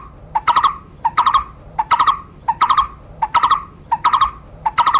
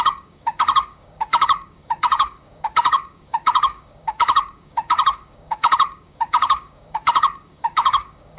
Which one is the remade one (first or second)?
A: second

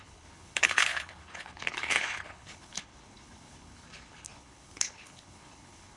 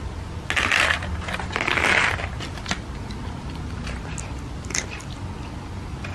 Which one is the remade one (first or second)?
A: first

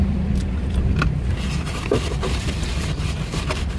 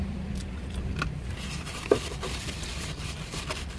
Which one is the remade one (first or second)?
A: second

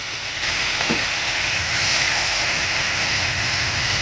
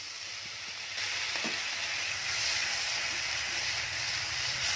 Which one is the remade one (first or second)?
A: first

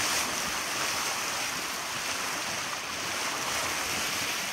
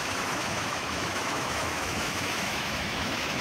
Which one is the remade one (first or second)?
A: second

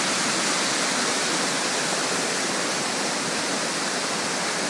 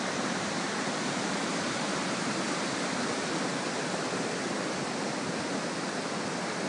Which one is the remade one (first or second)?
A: second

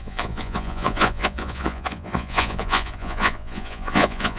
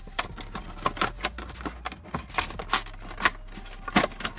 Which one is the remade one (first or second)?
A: first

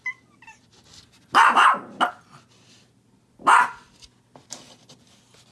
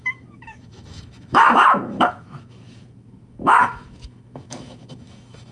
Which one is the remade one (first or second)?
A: second